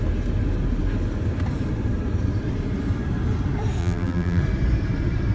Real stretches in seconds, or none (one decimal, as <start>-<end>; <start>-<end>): 0.0-3.8; 4.4-5.3